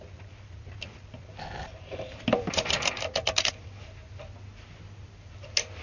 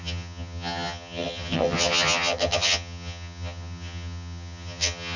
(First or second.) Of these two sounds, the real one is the first